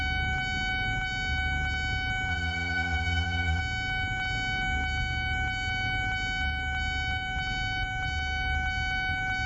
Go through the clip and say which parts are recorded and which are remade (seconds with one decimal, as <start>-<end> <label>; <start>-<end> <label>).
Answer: 0.0-2.3 recorded; 2.3-3.6 remade; 3.6-9.5 recorded